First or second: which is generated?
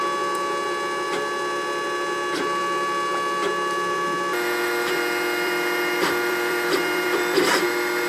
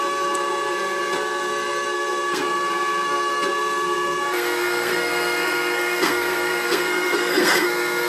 second